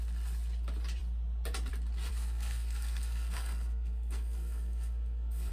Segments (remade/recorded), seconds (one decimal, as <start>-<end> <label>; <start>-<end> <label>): 0.0-2.1 recorded; 2.1-5.5 remade